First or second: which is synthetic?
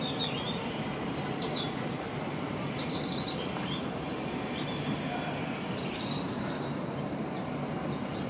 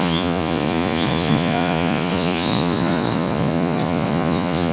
second